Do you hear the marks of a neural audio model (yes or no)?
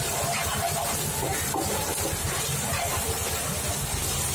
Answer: no